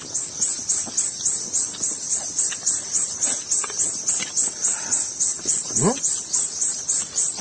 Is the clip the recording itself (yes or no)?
yes